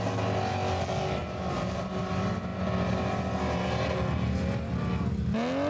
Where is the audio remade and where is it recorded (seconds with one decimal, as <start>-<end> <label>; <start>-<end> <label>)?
0.0-5.7 recorded